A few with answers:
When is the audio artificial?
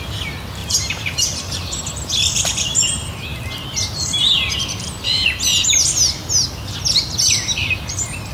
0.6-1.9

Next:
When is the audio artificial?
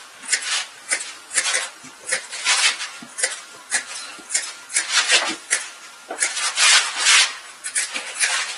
none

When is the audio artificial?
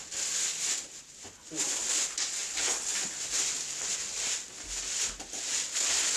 none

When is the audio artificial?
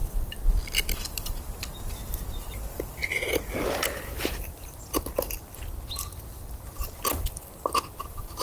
2.4-3.0; 6.5-7.1; 8.0-8.4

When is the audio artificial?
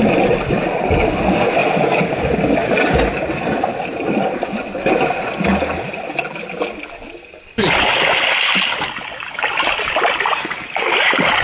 none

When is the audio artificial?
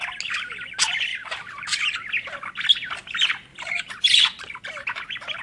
1.1-2.1; 3.5-4.6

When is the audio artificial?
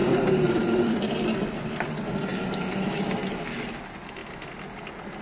0.0-1.7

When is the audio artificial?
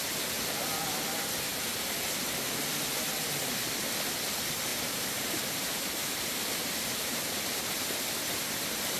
4.7-7.6